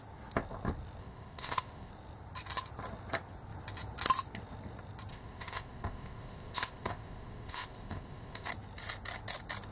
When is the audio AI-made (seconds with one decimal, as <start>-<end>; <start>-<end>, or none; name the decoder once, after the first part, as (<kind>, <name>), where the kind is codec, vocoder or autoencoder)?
1.0-1.9 (codec, ZipCodec); 5.1-8.5